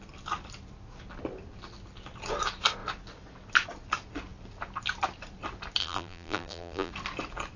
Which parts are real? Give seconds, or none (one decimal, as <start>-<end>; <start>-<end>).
0.0-5.8; 6.9-7.6